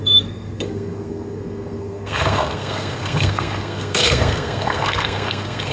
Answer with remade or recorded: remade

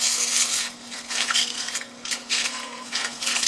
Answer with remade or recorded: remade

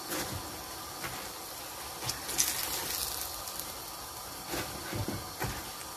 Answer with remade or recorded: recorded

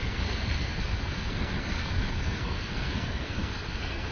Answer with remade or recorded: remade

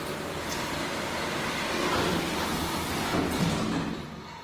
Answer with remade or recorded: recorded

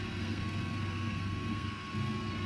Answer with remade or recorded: remade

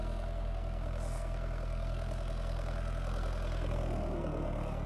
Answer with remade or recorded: remade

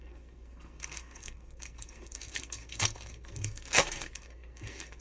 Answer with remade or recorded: remade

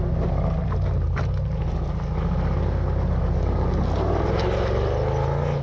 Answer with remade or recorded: recorded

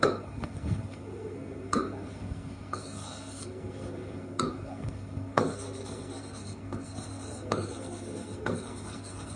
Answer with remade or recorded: remade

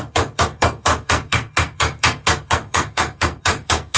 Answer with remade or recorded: remade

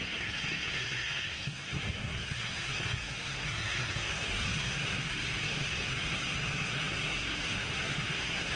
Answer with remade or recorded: remade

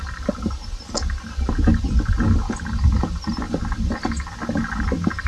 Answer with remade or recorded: recorded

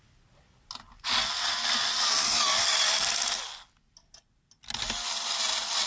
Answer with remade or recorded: recorded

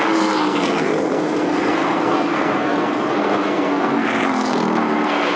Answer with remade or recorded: remade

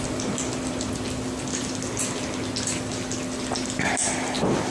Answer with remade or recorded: recorded